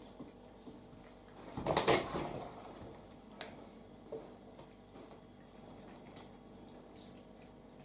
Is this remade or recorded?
recorded